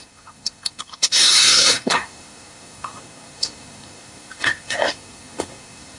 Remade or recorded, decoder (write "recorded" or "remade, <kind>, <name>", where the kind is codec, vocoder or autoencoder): remade, codec, SNAC